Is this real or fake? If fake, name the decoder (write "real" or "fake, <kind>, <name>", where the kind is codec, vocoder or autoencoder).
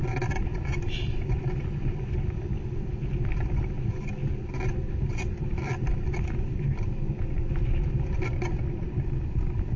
real